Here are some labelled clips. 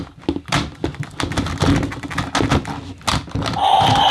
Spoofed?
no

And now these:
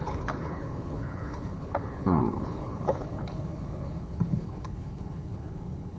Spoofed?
yes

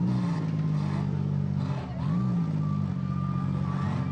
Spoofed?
no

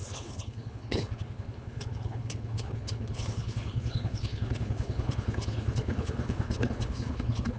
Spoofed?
yes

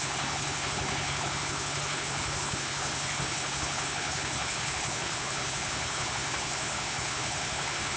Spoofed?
yes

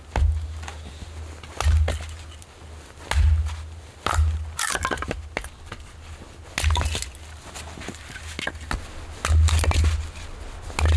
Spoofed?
no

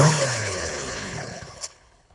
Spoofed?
yes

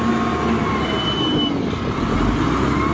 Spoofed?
no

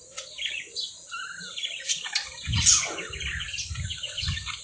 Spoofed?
no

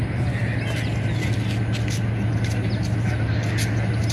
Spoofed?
no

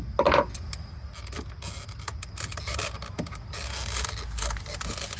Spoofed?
no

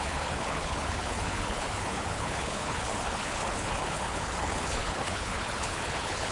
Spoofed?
yes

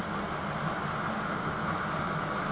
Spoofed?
no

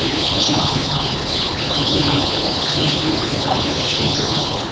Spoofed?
yes